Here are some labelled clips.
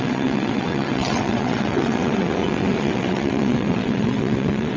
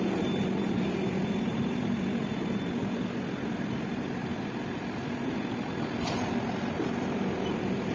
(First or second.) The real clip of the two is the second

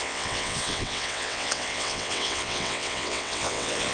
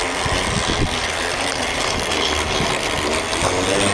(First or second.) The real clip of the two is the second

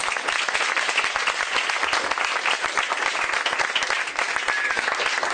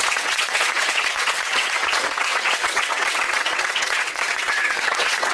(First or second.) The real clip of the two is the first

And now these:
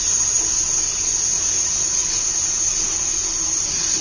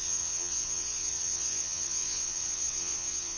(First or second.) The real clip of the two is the first